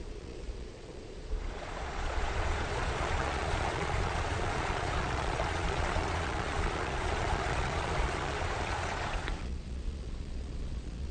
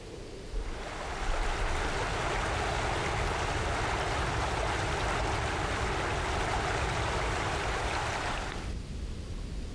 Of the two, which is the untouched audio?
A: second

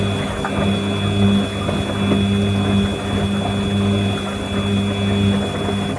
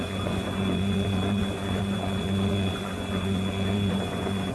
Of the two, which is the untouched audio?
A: first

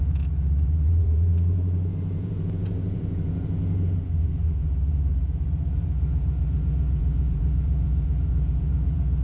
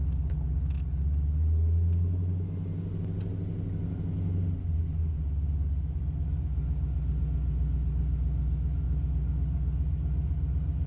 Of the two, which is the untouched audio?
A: second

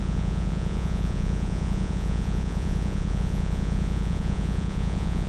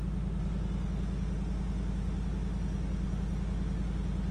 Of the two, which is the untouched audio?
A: second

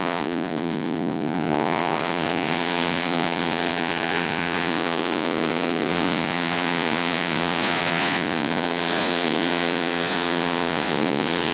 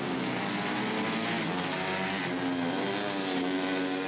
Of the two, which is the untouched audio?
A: second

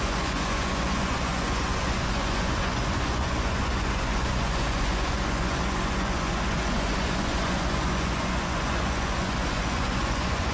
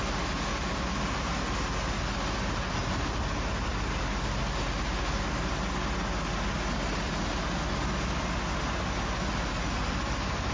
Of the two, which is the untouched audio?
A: second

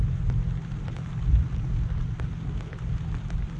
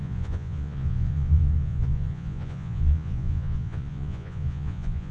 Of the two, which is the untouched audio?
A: first